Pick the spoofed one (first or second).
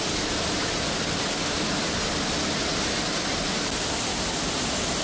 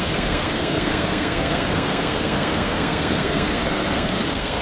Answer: second